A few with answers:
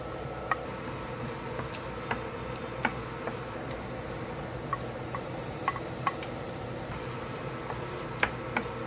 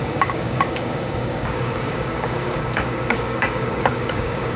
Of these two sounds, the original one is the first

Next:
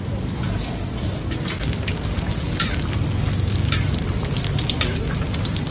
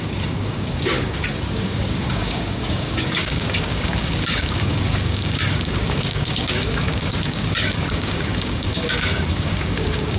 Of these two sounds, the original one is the first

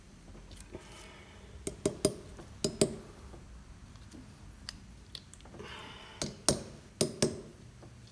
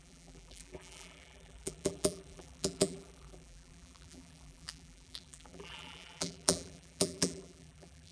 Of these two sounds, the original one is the first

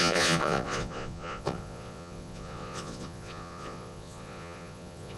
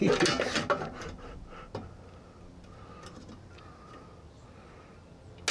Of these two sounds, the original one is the second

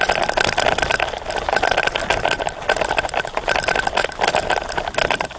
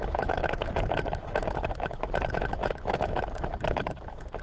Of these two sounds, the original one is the first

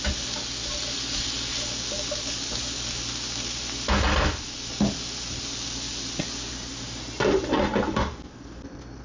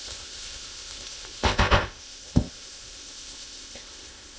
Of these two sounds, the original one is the first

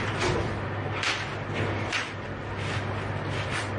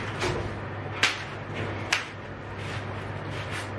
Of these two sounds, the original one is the second